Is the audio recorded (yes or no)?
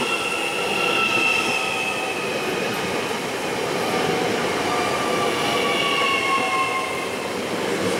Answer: yes